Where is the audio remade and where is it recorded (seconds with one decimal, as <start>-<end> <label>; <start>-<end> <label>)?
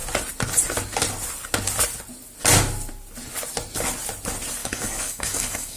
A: 0.0-4.6 recorded; 4.6-5.8 remade